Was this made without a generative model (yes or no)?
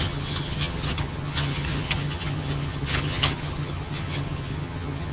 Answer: no